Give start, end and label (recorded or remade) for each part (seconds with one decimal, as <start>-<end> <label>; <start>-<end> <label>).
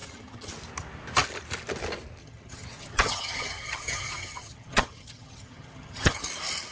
0.0-0.5 remade; 0.5-2.2 recorded; 2.2-6.2 remade; 6.2-6.7 recorded